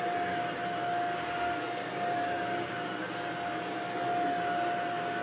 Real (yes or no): yes